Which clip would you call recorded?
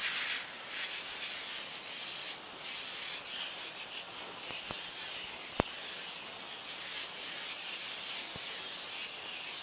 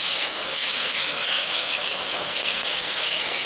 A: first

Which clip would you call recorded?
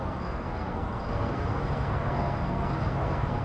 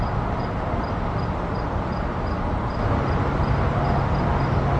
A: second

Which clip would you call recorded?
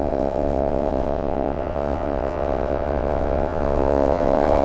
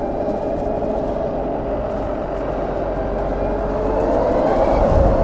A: second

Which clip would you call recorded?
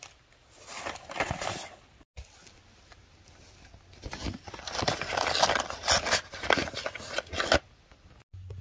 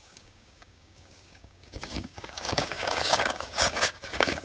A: first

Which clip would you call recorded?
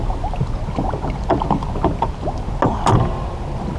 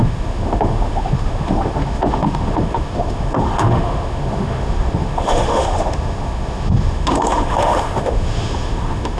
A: first